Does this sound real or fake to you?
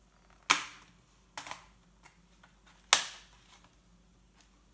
real